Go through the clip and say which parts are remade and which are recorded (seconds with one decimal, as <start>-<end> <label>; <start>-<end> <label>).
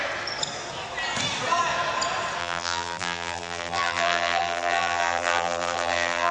0.0-2.4 recorded; 2.4-6.3 remade